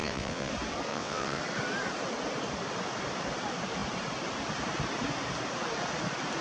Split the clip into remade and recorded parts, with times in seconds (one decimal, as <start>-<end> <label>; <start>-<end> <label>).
0.0-0.5 remade; 0.5-0.9 recorded; 0.9-1.4 remade; 1.4-6.4 recorded